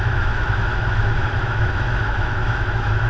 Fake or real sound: fake